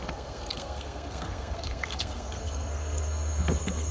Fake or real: fake